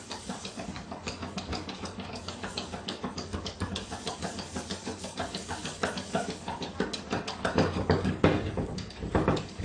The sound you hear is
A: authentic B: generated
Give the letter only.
B